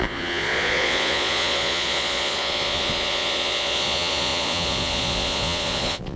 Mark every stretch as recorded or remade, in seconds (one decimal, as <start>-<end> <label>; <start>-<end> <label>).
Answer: 0.0-6.2 remade